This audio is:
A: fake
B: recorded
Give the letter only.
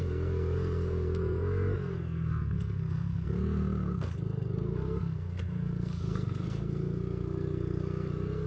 A